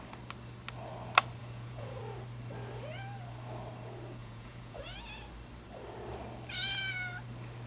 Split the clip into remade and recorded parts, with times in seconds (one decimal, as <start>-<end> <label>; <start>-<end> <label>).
0.0-1.4 recorded; 1.4-2.0 remade; 2.0-4.2 recorded; 4.2-4.8 remade; 4.8-7.7 recorded